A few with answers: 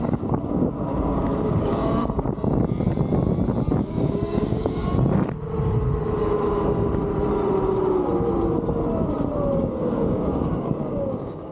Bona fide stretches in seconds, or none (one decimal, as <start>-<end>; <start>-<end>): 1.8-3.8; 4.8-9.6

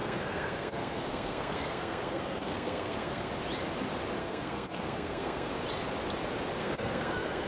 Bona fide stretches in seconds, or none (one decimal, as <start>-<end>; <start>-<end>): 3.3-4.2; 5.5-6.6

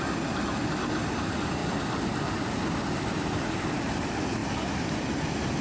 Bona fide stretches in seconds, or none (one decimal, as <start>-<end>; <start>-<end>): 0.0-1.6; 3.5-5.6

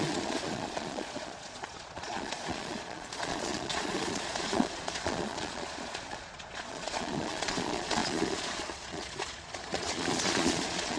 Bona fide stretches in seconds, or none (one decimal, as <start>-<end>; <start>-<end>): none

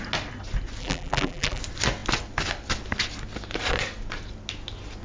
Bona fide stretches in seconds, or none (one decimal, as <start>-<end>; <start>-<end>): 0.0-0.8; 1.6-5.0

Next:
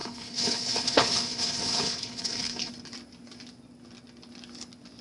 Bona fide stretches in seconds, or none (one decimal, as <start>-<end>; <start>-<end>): 2.7-5.0

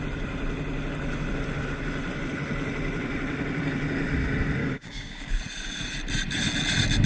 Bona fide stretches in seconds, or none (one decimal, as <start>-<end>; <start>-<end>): 0.0-4.6; 5.4-7.1